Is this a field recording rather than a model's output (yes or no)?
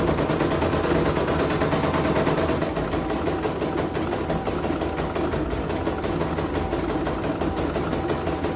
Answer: yes